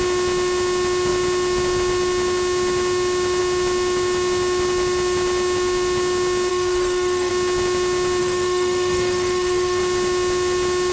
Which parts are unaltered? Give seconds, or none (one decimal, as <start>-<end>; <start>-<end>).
0.0-6.5; 7.3-8.2; 9.8-10.9